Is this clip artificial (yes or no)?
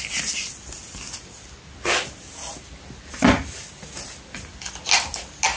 no